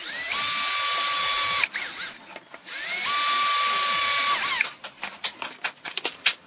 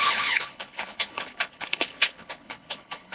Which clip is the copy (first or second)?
second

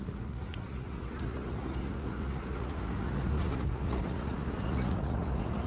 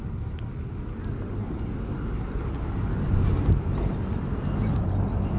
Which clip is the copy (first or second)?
first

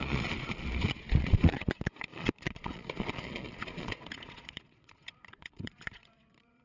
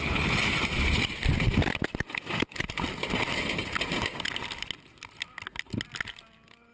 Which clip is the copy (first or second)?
first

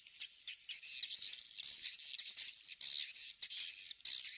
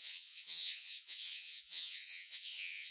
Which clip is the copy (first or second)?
second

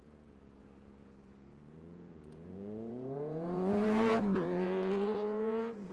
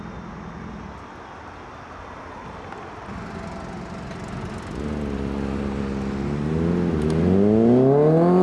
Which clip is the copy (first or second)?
first